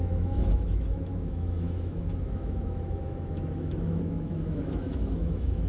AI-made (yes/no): yes